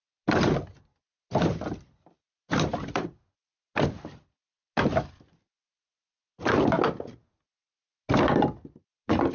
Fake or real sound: real